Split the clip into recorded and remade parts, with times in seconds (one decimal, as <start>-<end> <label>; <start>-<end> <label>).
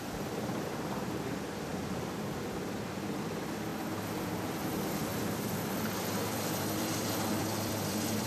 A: 0.0-1.7 remade; 1.7-3.1 recorded; 3.1-3.7 remade; 3.7-4.4 recorded; 4.4-8.3 remade